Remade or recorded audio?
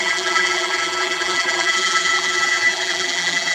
remade